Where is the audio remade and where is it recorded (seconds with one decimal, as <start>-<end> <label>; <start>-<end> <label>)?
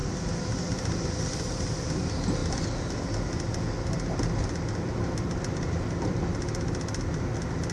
0.0-7.7 recorded